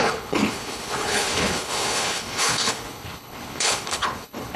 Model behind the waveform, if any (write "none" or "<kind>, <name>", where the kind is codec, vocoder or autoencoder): codec, HILCodec